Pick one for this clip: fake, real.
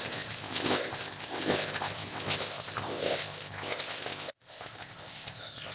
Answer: fake